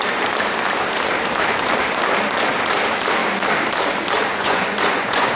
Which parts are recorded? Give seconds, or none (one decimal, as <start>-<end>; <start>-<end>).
0.0-4.3